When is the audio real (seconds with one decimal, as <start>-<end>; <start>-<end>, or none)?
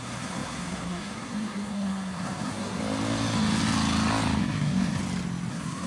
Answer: 2.8-4.4; 5.0-5.5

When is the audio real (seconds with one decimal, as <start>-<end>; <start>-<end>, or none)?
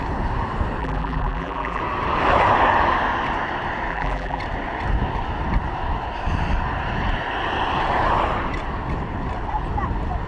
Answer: 0.0-0.8; 1.8-3.9; 4.4-10.3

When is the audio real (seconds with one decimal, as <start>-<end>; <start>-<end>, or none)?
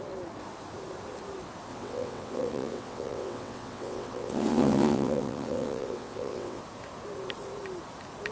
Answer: 0.0-1.7; 6.6-8.3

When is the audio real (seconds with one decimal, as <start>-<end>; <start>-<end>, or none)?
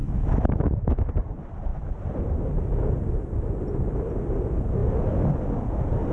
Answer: 1.1-6.1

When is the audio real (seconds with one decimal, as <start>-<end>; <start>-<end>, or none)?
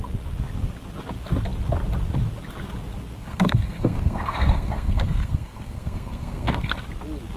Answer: 0.0-3.2; 6.8-7.4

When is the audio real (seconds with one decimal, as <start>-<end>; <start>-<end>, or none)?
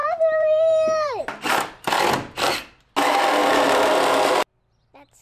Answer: 2.0-5.2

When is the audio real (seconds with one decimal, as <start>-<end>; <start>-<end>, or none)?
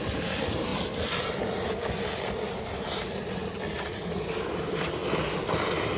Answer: 0.7-2.6; 3.4-4.0; 5.0-6.0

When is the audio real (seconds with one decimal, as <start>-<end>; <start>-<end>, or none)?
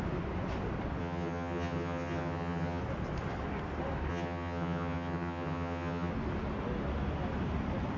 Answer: 0.0-1.0; 2.8-4.1; 6.1-8.0